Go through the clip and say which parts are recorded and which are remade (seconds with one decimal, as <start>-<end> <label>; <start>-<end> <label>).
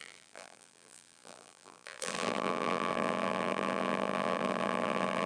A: 0.0-5.3 remade